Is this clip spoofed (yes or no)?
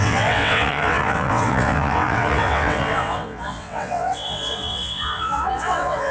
yes